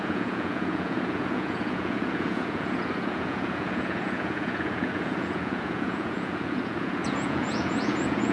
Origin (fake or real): fake